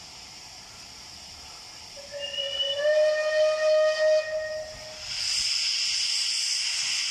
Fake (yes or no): no